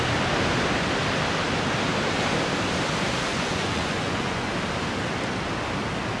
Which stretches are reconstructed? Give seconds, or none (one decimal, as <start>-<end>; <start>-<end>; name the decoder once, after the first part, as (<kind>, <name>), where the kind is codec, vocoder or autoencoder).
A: 3.3-4.5 (vocoder, Vocos)